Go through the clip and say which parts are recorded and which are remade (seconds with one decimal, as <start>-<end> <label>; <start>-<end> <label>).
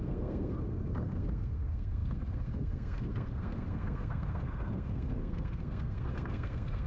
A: 0.0-6.9 remade